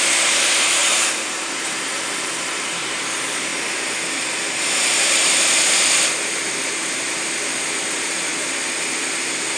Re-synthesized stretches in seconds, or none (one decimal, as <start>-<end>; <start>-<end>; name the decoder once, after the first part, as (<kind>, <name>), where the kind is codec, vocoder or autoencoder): 0.0-3.5 (vocoder, BigVGAN v2); 4.1-8.3; 8.8-9.6